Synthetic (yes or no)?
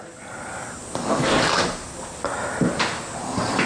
no